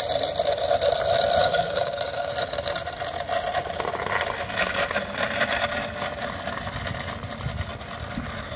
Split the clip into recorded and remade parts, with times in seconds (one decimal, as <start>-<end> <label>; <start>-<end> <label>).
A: 0.0-1.4 recorded; 1.4-2.3 remade; 2.3-8.6 recorded